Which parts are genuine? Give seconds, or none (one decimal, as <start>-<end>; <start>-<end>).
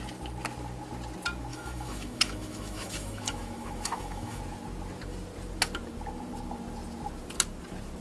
0.0-1.5; 4.4-8.0